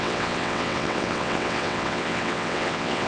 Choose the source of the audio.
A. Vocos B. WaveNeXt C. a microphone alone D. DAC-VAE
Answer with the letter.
B